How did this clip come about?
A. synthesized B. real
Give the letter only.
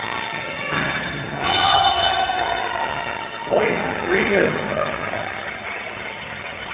A